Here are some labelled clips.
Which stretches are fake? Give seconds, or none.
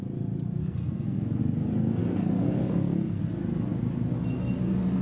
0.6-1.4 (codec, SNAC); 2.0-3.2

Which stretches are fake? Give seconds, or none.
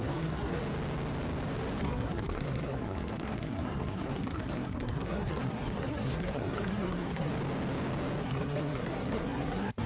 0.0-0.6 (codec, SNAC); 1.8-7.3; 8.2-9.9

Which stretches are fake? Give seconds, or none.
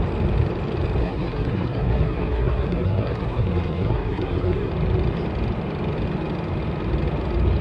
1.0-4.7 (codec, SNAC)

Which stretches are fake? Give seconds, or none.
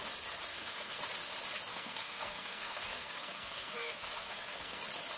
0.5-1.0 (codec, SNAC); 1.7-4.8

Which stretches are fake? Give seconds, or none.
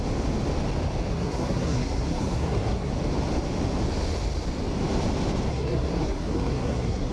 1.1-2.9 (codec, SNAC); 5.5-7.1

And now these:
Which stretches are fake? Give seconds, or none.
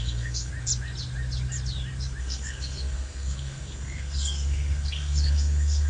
0.0-0.5 (codec, SNAC); 2.2-5.9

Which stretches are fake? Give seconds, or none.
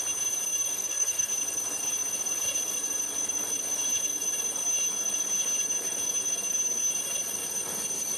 0.7-1.3 (codec, SNAC)